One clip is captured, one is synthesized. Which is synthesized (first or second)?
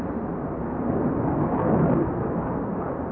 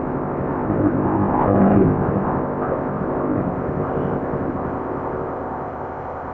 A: second